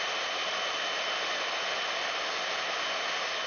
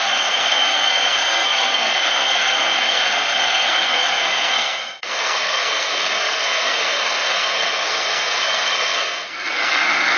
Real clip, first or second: first